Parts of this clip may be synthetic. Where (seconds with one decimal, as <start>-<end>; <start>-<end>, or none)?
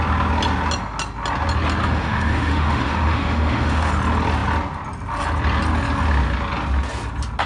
1.8-3.9